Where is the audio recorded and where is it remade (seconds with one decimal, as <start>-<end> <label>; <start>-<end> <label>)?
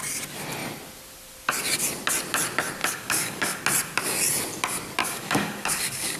0.0-2.8 recorded; 2.8-3.6 remade; 3.6-5.0 recorded; 5.0-6.2 remade